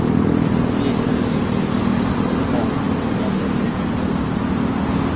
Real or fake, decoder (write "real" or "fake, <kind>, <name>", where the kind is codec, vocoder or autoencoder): real